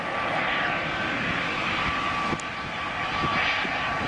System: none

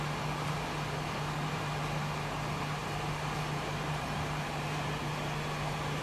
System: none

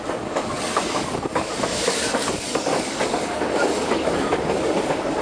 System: codec, DAC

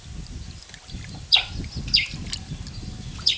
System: none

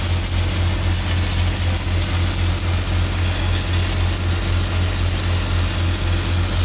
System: none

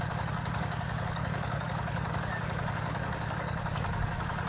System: codec, DAC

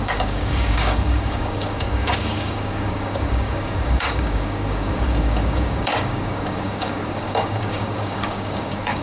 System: codec, DAC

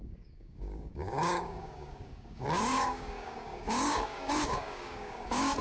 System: codec, DAC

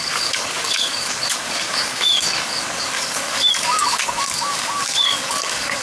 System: codec, DAC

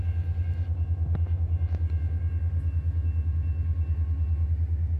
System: none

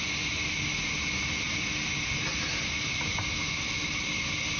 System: none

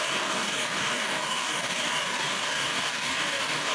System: codec, DAC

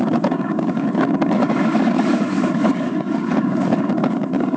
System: codec, DAC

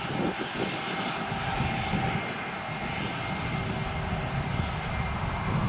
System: none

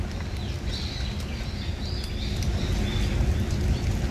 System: none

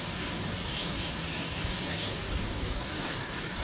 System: codec, DAC